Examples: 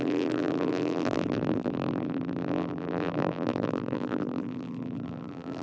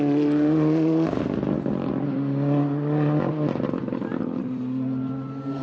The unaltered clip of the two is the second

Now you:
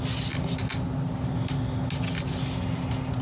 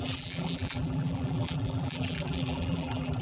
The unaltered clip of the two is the first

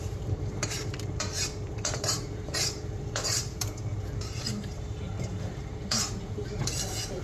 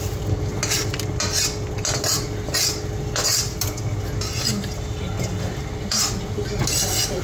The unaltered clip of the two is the second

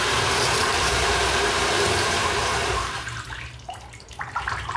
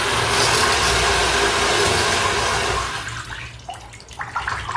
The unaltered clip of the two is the second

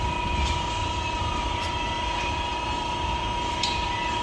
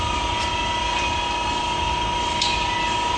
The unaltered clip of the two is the second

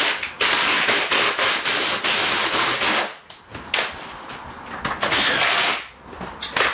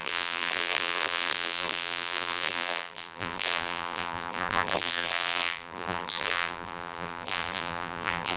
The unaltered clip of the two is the first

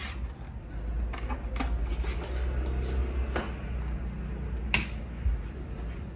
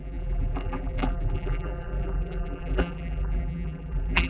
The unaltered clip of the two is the first